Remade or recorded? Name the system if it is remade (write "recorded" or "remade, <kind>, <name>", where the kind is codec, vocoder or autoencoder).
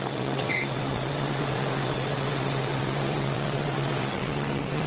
remade, vocoder, WaveNeXt